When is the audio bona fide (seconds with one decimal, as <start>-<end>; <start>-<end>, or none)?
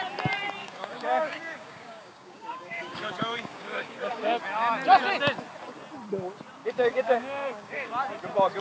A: 0.0-0.6; 4.4-6.6; 7.9-8.6